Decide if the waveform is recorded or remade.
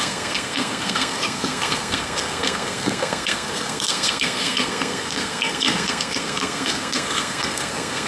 remade